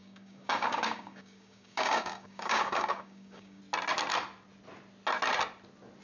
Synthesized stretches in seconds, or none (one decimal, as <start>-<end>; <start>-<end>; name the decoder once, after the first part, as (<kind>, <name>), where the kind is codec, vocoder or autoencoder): 0.0-3.6 (codec, DAC)